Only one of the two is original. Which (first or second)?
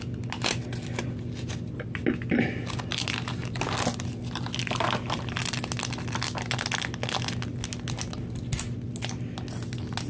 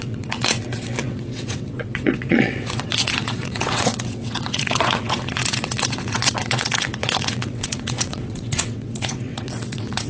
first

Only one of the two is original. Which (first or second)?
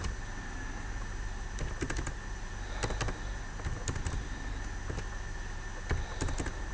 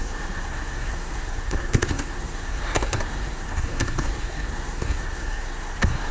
first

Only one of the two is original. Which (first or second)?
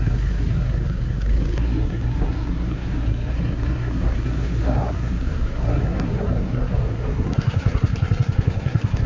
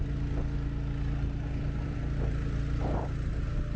second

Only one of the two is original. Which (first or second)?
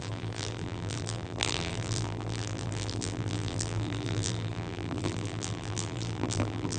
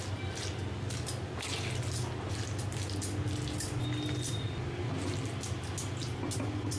second